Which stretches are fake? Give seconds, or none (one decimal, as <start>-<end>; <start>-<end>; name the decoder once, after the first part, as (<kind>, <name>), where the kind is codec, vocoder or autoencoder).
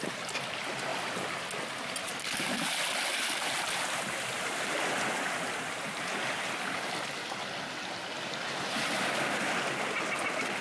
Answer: none